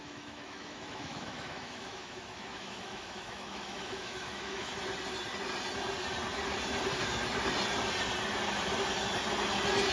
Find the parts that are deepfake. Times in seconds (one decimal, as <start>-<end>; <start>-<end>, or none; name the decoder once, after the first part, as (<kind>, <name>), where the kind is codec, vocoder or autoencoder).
0.0-4.7 (autoencoder, DAC-VAE)